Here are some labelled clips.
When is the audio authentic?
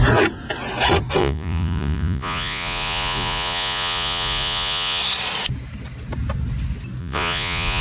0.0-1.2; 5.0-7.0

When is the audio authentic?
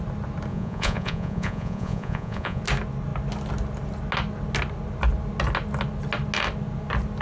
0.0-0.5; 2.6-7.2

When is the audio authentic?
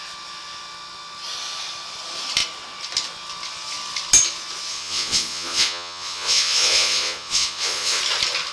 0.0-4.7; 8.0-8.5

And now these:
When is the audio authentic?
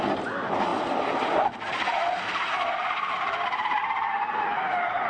0.0-5.1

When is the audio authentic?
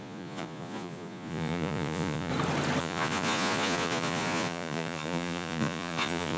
2.3-2.8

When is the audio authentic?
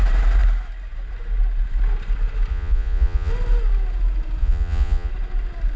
0.0-2.5; 3.3-4.4; 5.1-5.8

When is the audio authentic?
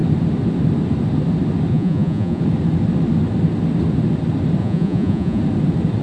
0.0-1.7; 2.4-4.6; 5.4-6.0